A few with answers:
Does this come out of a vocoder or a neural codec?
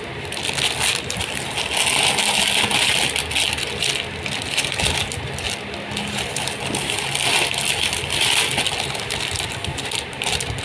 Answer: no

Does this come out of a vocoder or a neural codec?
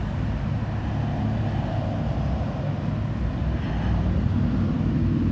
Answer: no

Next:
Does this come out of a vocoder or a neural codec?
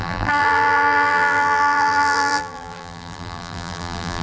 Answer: yes